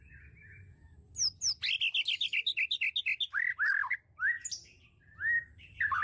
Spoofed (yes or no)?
no